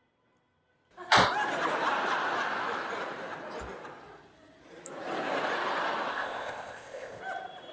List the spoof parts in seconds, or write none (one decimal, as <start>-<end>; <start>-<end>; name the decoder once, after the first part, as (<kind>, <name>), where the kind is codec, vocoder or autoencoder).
6.1-7.2 (codec, ZipCodec)